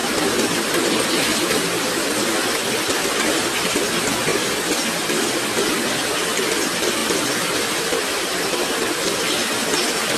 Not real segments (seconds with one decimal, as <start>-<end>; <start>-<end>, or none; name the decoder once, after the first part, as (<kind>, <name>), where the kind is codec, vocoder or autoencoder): 0.0-3.9 (vocoder, BigVGAN v2); 7.0-8.5